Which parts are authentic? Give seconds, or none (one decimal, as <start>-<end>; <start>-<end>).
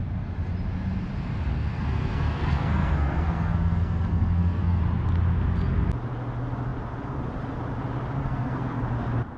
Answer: 0.0-1.5; 4.8-8.2; 8.8-9.4